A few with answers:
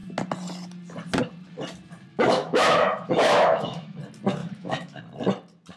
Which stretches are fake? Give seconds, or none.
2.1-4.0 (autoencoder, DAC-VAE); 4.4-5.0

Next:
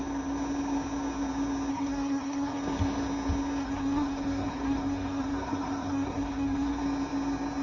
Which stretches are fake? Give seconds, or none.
1.7-2.6 (codec, SNAC); 3.6-6.8

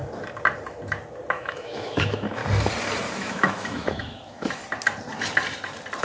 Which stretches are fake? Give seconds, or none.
1.3-2.4 (autoencoder, DAC-VAE); 3.1-4.6

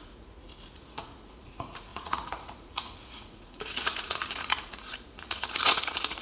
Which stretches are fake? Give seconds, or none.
0.0-6.2 (vocoder, Vocos)

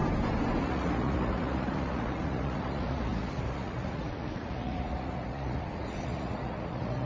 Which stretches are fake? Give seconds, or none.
0.6-7.1 (vocoder, Vocos)